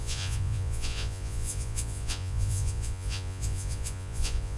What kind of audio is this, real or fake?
fake